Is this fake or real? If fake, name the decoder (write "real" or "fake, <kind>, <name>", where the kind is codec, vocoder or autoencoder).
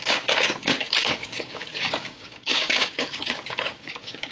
fake, codec, DAC